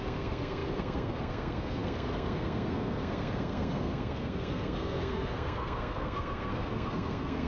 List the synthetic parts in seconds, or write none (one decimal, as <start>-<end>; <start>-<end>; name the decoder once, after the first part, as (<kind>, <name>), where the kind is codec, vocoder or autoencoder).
0.0-7.5 (codec, SNAC)